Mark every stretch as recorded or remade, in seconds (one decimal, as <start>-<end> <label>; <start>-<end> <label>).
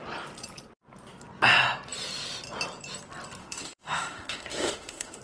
0.0-3.4 recorded; 3.4-5.2 remade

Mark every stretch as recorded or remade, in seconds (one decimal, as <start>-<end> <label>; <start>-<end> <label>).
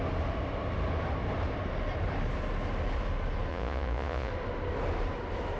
0.0-3.5 recorded; 3.5-4.3 remade; 4.3-5.6 recorded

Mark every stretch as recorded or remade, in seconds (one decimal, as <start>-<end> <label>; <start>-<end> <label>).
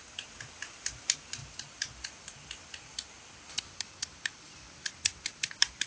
0.0-1.4 recorded; 1.4-4.5 remade; 4.5-5.9 recorded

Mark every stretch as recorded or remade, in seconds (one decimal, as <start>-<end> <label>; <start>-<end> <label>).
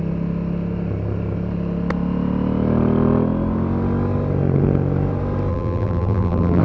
0.0-5.5 recorded; 5.5-6.6 remade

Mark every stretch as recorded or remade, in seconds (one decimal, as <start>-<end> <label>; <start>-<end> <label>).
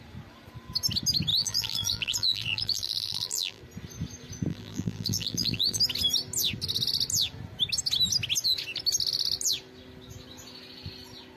0.0-1.3 recorded; 1.3-3.6 remade; 3.6-4.5 recorded; 4.5-5.8 remade; 5.8-11.4 recorded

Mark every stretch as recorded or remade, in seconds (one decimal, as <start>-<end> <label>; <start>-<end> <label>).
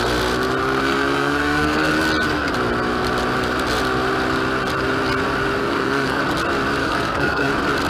0.0-0.6 recorded; 0.6-1.9 remade; 1.9-5.6 recorded; 5.6-6.2 remade; 6.2-6.8 recorded; 6.8-7.5 remade; 7.5-7.9 recorded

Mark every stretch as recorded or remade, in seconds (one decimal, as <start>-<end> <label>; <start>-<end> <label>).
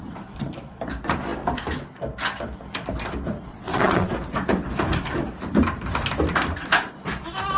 0.0-3.5 recorded; 3.5-4.1 remade; 4.1-7.6 recorded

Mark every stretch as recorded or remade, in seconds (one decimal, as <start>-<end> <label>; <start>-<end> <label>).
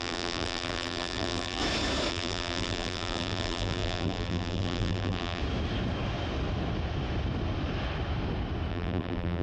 0.0-1.6 remade; 1.6-2.1 recorded; 2.1-5.4 remade; 5.4-8.7 recorded; 8.7-9.4 remade